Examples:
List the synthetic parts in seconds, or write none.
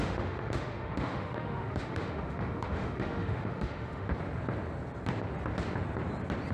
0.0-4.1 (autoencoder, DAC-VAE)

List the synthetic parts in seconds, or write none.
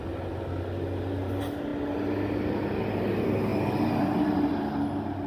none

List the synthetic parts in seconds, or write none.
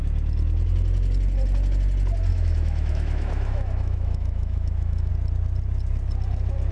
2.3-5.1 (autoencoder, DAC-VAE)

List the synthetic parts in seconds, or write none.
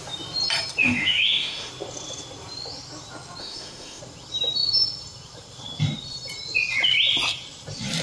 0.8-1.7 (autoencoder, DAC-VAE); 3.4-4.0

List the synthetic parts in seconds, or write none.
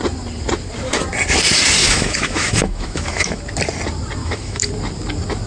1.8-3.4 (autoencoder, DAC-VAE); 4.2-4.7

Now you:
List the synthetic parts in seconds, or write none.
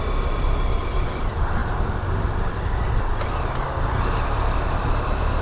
none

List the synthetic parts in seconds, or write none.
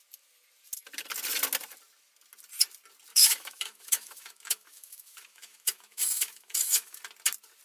3.1-7.0 (autoencoder, DAC-VAE)